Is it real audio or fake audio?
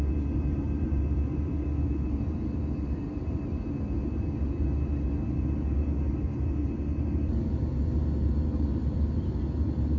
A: fake